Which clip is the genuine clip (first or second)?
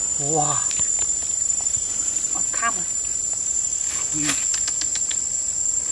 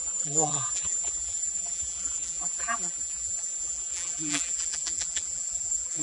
first